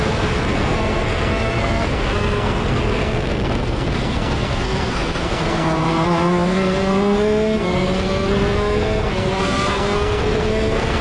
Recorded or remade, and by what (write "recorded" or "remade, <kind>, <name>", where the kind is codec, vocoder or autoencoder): remade, codec, SNAC